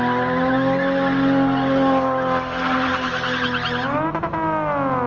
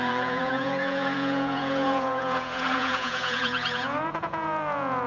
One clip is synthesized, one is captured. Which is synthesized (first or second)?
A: second